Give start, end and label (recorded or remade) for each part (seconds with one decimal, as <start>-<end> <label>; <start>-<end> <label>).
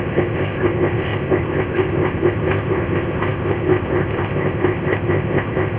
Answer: 0.0-5.8 remade